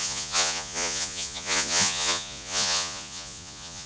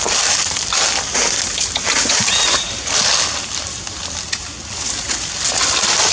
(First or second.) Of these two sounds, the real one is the second